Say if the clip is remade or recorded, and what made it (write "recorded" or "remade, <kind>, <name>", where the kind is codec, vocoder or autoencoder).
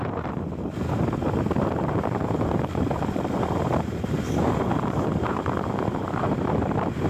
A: remade, vocoder, BigVGAN v2